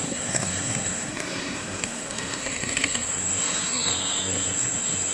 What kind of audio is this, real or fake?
fake